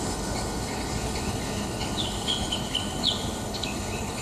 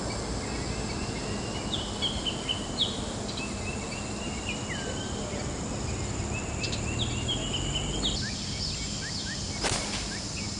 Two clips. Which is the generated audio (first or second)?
first